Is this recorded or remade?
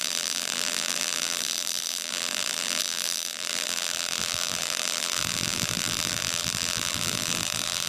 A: remade